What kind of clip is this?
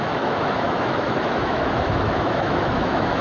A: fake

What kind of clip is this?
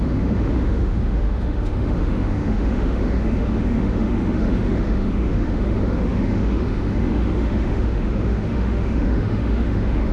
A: fake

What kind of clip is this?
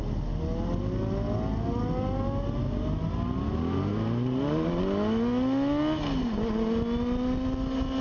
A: real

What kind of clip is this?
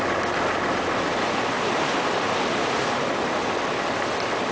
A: real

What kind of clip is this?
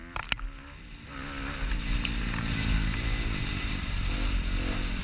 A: real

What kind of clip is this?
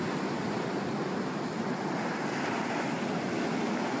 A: real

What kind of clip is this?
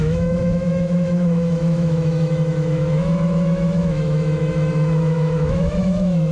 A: fake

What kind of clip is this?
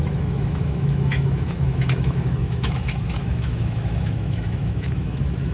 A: fake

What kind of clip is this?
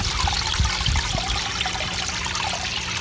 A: real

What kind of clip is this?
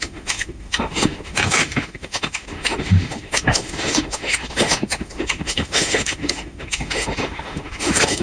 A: fake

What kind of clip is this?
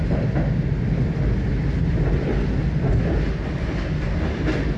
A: real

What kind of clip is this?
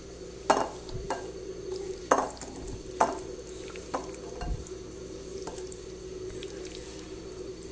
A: real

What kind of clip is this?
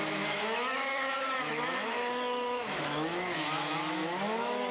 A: fake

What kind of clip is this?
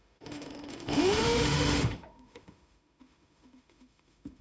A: fake